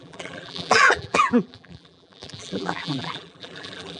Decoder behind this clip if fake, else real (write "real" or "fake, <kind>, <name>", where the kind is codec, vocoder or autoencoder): fake, vocoder, BigVGAN v2